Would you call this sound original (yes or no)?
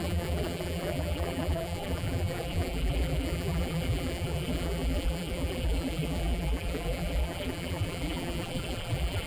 no